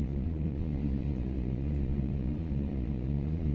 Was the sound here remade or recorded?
remade